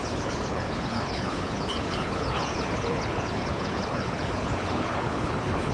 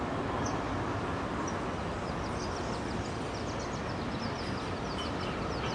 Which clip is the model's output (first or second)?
first